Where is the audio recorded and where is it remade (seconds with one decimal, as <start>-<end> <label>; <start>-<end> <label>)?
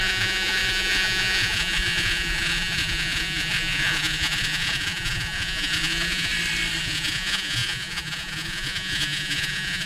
0.0-6.3 remade; 6.3-6.8 recorded; 6.8-9.9 remade